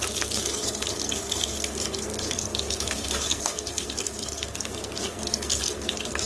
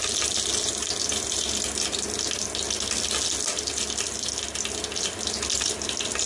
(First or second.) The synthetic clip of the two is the first